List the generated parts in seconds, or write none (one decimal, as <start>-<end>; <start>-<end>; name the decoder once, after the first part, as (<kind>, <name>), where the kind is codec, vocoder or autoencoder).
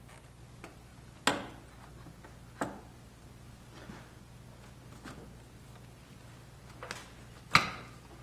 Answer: none